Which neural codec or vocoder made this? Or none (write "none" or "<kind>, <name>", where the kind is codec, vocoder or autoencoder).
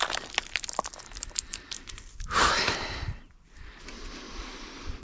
vocoder, BigVGAN v2